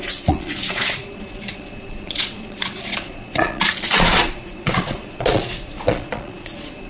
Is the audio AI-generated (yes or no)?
yes